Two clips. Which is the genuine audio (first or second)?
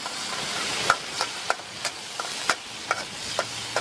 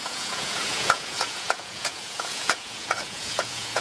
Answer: first